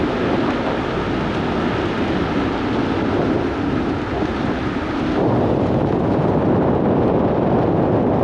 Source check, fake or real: real